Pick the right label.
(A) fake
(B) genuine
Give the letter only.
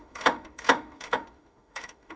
A